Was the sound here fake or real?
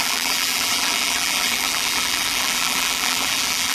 fake